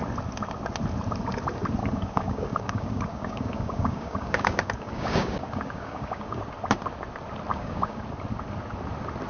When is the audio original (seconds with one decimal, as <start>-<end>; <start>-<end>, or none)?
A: 0.0-1.8; 6.4-7.5; 8.0-9.3